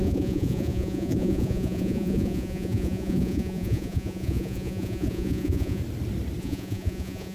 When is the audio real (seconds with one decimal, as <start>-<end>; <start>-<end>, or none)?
5.8-6.4